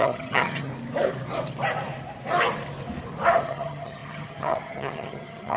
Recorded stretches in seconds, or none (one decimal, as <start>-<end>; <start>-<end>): 0.7-3.4